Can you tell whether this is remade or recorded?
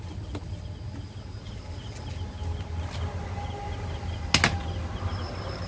recorded